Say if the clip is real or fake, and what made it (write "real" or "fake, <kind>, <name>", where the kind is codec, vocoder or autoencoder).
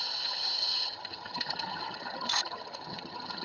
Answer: fake, vocoder, HiFi-GAN